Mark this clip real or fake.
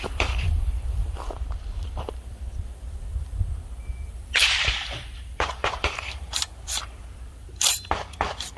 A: fake